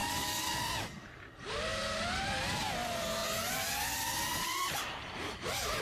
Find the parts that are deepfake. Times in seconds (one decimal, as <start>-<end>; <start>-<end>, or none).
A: 0.0-0.6